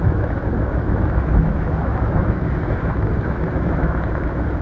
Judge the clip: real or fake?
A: fake